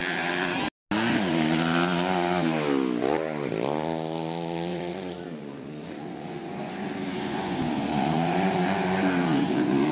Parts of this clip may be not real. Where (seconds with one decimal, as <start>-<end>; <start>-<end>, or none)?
4.7-9.9